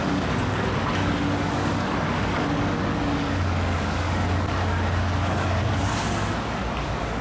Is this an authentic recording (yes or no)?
no